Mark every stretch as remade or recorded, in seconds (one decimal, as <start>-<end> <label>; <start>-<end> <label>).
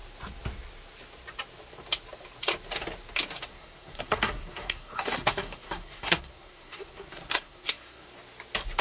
0.0-3.5 recorded; 3.5-8.1 remade; 8.1-8.8 recorded